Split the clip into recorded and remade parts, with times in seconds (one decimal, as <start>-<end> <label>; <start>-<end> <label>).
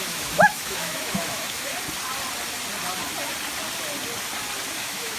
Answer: 0.0-1.7 remade; 1.7-4.8 recorded; 4.8-5.2 remade